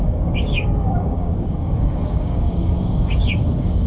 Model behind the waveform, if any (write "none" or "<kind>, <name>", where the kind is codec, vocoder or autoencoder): codec, DAC